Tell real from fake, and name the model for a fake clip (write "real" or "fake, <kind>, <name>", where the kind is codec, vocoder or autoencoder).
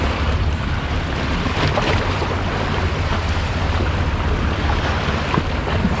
fake, vocoder, BigVGAN v2